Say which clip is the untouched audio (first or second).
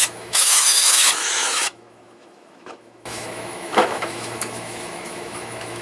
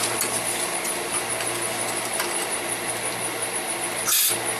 second